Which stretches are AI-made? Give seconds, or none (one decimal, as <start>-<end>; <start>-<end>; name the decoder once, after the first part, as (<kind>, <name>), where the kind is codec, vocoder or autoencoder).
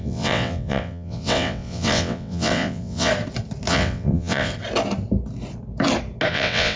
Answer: 0.0-3.1 (vocoder, WaveNeXt); 3.7-4.5; 6.3-6.8